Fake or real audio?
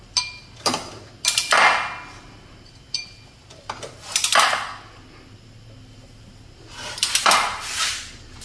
real